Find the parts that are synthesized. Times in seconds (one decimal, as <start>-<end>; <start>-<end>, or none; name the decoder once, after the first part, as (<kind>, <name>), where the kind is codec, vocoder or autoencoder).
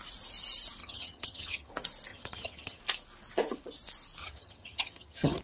0.8-1.7 (vocoder, HiFi-GAN); 2.1-2.8; 4.2-5.4